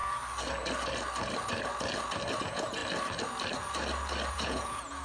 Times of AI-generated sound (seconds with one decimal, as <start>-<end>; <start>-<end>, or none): 2.4-2.8; 4.3-5.0